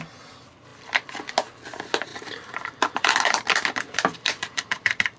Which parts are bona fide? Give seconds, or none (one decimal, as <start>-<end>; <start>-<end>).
0.0-0.7; 1.2-2.1